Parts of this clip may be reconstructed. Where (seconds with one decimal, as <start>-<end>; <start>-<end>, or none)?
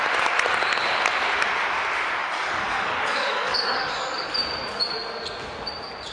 2.2-4.3